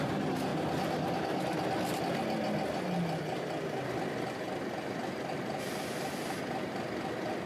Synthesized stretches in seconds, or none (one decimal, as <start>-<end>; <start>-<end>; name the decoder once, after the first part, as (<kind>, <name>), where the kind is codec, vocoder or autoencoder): none